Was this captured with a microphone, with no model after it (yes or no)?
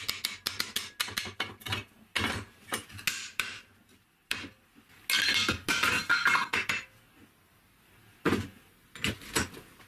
yes